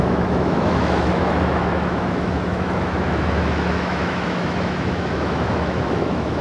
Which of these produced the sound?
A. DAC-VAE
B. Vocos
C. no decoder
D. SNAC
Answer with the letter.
A